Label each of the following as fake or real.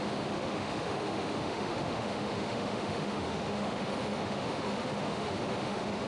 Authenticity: fake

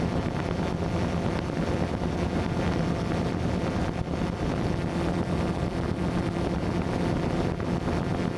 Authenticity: real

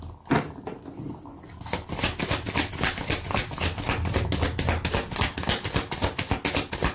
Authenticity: real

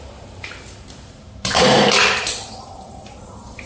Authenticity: fake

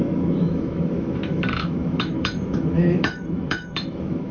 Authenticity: fake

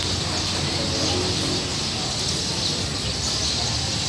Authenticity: real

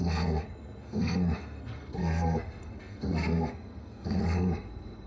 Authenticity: fake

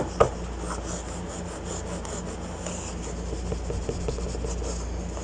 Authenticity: real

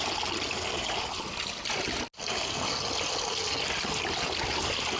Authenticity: real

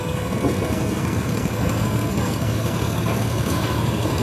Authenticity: fake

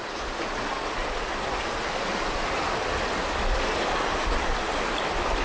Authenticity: real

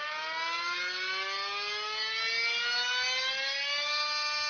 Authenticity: real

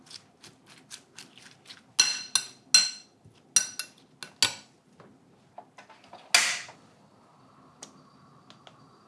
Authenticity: real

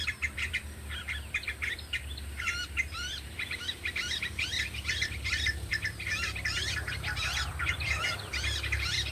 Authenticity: fake